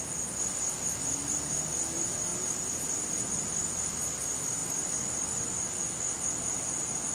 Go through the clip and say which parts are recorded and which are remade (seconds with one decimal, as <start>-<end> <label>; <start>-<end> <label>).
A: 0.0-2.3 recorded; 2.3-3.3 remade; 3.3-7.1 recorded